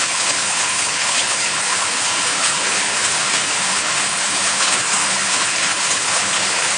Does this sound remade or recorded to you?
remade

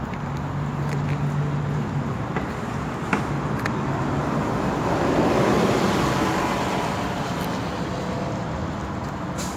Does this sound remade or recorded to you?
recorded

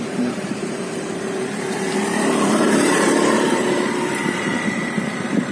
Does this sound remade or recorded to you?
remade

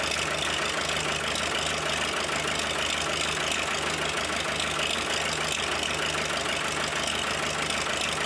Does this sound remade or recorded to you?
recorded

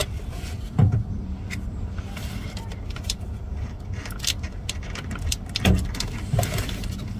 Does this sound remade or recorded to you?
remade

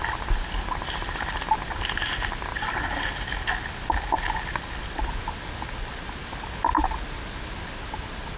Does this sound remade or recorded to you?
recorded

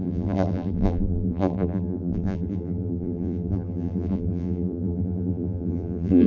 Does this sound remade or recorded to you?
remade